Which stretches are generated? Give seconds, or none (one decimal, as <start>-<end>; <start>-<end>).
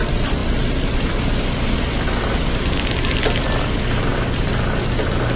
none